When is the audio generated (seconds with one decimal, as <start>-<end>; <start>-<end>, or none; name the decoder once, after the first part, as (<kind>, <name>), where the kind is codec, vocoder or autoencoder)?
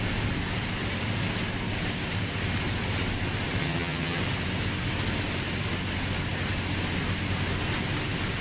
3.6-4.2 (vocoder, HiFi-GAN)